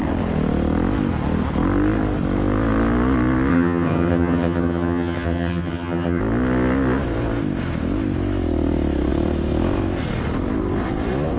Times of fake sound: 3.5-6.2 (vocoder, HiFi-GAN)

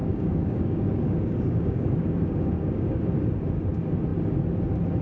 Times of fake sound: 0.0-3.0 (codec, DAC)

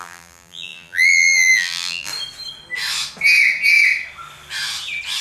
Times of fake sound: 0.0-2.1 (vocoder, BigVGAN v2)

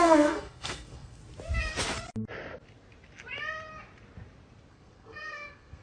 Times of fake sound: 0.0-1.2 (codec, SNAC); 4.7-5.8

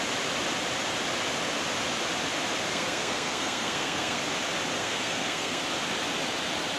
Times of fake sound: 2.7-4.2 (codec, SNAC); 4.8-5.6

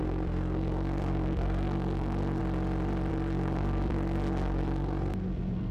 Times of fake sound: 0.0-2.4 (codec, SNAC); 3.1-5.7

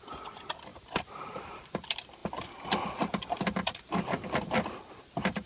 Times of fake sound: 0.7-1.6 (vocoder, BigVGAN v2)